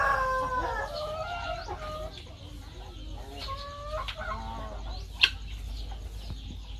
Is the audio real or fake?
real